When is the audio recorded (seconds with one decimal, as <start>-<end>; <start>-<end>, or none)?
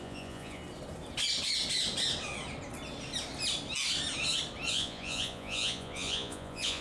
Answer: 0.6-4.7